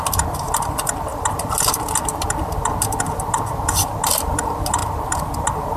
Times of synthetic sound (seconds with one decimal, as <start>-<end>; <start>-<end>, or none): none